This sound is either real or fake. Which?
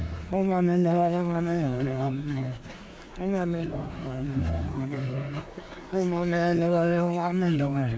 fake